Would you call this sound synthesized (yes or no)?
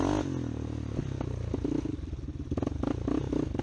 no